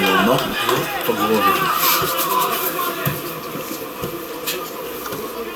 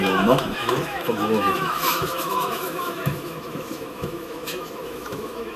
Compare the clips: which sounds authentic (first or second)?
first